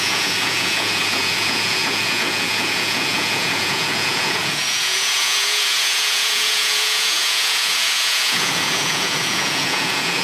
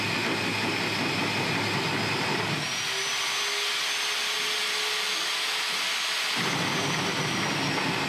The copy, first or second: first